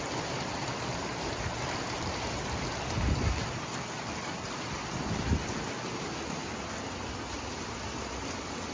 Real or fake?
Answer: real